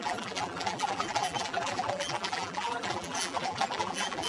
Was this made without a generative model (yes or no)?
no